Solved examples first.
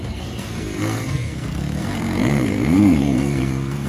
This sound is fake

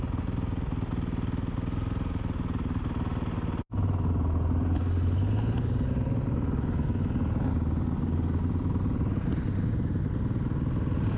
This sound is real